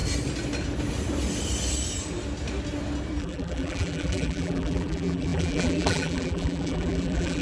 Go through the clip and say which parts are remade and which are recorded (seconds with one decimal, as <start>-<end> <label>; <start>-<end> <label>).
0.0-3.2 recorded; 3.2-7.4 remade

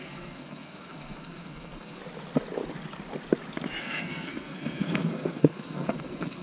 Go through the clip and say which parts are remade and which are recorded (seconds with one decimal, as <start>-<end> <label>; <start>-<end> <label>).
0.0-2.0 remade; 2.0-3.8 recorded; 3.8-6.4 remade

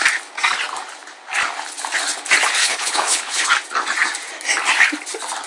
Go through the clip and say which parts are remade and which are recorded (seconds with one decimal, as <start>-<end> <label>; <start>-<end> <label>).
0.0-2.6 recorded; 2.6-3.5 remade; 3.5-5.5 recorded

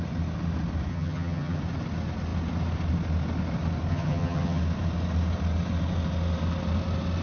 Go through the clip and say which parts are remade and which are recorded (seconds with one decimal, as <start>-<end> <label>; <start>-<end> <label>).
0.0-0.9 recorded; 0.9-1.6 remade; 1.6-3.9 recorded; 3.9-4.6 remade; 4.6-7.2 recorded

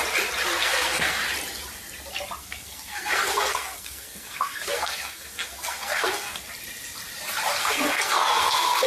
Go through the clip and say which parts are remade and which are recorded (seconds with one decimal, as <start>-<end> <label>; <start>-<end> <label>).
0.0-0.6 recorded; 0.6-1.2 remade; 1.2-2.4 recorded; 2.4-6.5 remade; 6.5-7.6 recorded; 7.6-8.9 remade

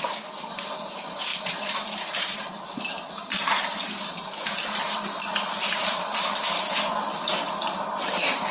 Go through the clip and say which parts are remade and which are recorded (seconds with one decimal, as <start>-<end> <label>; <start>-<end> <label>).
0.0-8.5 remade

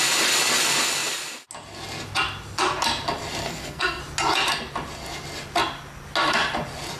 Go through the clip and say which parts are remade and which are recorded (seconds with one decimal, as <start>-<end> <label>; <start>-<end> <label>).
0.0-3.4 recorded; 3.4-4.0 remade; 4.0-7.0 recorded

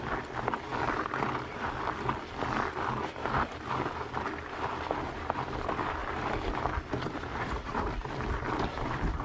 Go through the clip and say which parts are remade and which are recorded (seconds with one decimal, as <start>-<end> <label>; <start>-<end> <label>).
0.0-7.3 recorded; 7.3-7.9 remade; 7.9-9.2 recorded